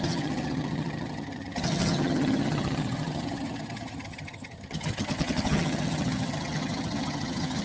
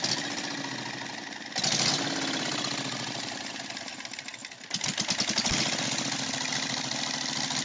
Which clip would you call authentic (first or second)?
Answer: second